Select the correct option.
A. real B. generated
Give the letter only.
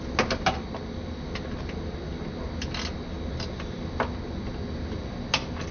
A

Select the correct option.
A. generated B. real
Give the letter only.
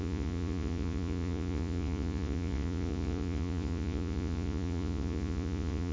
A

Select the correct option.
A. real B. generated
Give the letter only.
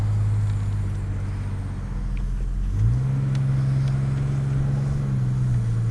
A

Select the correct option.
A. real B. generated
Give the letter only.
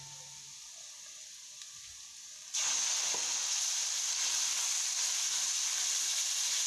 A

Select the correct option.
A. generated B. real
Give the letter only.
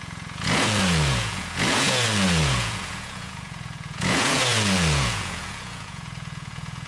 A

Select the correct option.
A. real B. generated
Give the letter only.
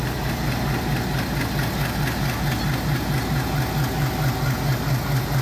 A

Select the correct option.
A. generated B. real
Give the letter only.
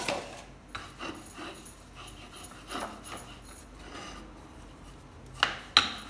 B